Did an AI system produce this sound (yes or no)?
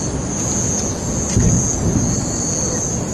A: no